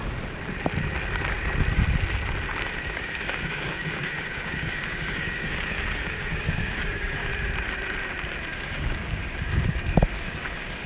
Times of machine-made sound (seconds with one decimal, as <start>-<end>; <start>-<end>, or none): 3.0-7.3; 8.5-10.9